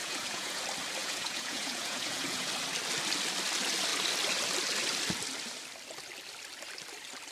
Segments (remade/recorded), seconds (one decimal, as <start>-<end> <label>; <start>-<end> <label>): 0.0-0.6 remade; 0.6-1.0 recorded; 1.0-2.5 remade; 2.5-7.3 recorded